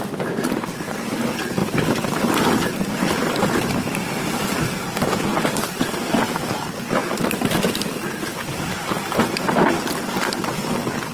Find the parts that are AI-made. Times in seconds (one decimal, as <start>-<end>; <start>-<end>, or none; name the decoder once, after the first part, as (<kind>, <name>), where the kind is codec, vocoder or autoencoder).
1.6-3.3 (vocoder, BigVGAN v2); 5.3-6.2; 7.0-9.9